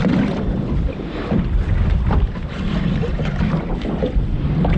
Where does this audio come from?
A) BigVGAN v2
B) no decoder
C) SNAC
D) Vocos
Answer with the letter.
B